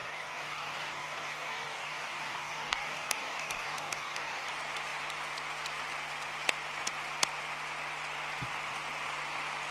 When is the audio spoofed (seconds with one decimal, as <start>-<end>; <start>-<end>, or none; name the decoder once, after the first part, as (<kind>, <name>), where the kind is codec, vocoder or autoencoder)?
0.0-4.5 (codec, DAC)